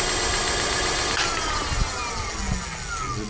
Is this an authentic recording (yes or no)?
yes